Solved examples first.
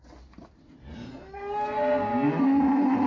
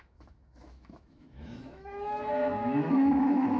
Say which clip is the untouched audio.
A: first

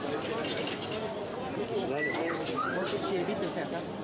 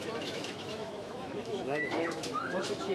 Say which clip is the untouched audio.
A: first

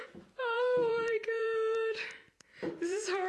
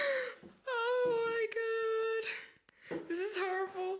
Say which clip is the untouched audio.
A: second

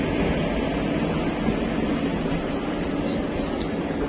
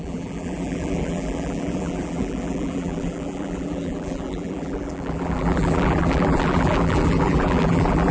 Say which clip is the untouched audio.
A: first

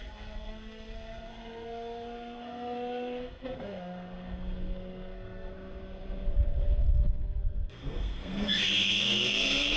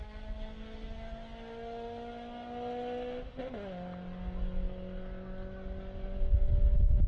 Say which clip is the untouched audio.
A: second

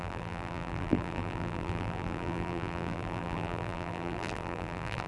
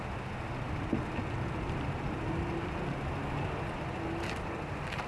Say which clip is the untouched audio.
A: second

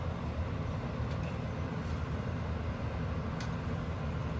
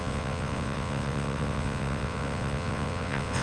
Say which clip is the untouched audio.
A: first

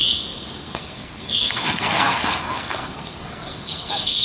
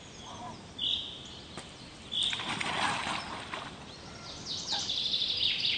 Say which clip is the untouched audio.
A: second